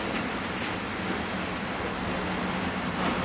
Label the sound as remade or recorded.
recorded